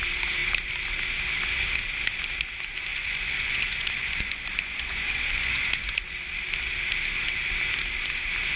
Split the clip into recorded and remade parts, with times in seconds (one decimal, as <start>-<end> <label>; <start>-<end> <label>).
0.0-2.9 recorded; 2.9-6.2 remade; 6.2-8.6 recorded